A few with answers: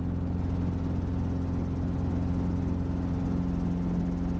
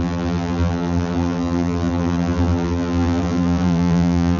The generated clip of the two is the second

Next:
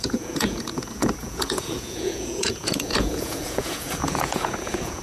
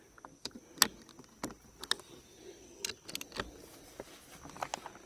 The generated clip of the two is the first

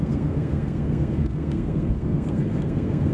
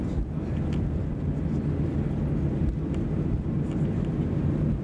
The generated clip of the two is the first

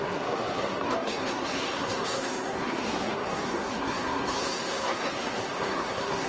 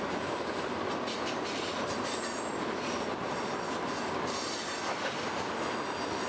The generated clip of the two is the first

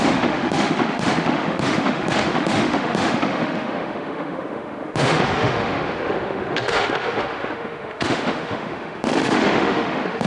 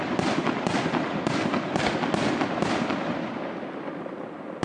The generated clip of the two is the first